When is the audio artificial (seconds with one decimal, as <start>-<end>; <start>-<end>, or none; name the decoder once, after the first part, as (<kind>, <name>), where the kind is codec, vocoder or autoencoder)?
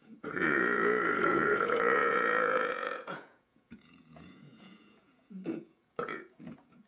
0.0-6.9 (vocoder, Vocos)